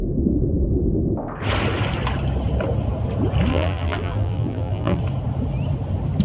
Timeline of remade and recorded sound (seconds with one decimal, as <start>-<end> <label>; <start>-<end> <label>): 0.0-3.5 recorded; 3.5-5.0 remade; 5.0-6.2 recorded